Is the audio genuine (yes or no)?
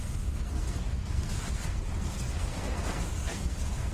no